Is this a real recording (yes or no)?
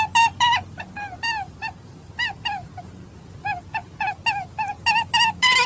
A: yes